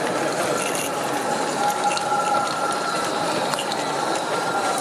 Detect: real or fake real